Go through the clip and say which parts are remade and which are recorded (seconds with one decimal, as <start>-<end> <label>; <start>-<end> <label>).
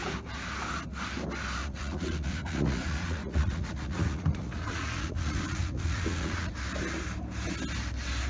0.0-1.6 recorded; 1.6-6.5 remade; 6.5-8.3 recorded